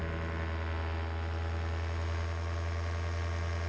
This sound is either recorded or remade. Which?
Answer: recorded